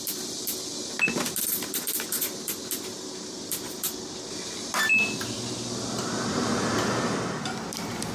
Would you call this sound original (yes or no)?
yes